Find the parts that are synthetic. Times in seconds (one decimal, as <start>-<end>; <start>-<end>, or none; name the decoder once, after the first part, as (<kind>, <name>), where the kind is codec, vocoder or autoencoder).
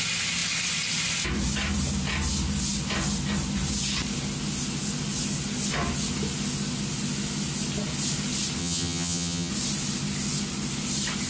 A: 8.6-9.5 (vocoder, HiFi-GAN)